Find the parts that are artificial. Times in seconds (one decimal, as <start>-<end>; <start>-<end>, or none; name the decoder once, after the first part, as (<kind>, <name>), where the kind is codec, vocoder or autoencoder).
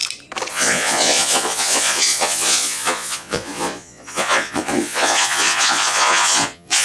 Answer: 0.5-6.8 (vocoder, Vocos)